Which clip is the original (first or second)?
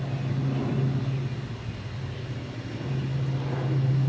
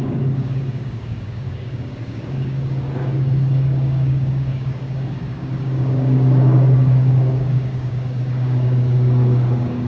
first